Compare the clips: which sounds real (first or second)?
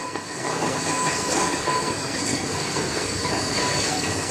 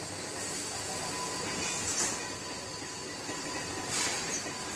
second